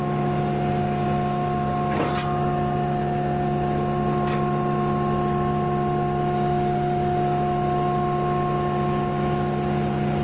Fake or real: real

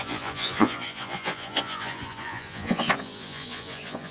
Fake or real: fake